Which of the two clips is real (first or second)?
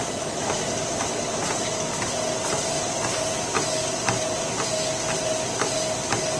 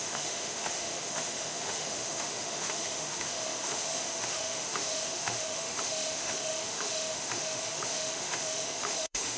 first